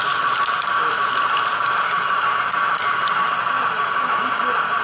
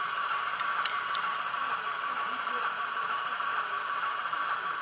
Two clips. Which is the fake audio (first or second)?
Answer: second